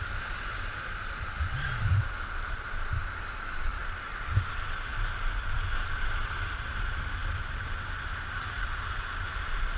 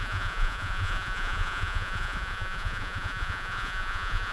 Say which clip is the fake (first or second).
second